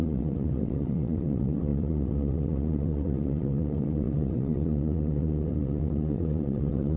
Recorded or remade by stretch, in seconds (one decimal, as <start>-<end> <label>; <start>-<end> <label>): 0.0-7.0 remade